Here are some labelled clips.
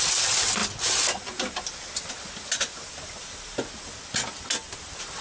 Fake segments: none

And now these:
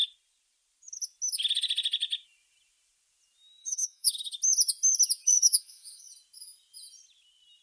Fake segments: 3.6-4.1 (autoencoder, DAC-VAE); 5.2-6.1

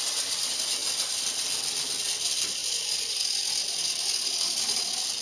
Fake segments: none